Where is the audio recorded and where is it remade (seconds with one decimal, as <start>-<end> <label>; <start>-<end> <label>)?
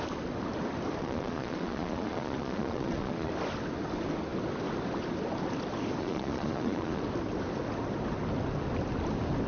0.0-1.0 recorded; 1.0-3.3 remade; 3.3-6.0 recorded; 6.0-7.0 remade; 7.0-9.5 recorded